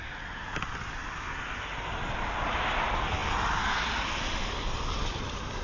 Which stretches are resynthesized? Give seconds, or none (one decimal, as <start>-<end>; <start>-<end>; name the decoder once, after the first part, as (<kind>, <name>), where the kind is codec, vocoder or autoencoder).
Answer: none